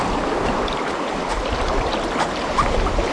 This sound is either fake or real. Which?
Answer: real